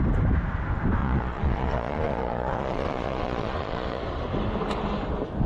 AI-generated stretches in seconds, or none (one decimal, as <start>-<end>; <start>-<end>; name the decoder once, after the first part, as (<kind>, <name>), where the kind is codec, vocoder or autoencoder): 1.0-4.0 (vocoder, Vocos)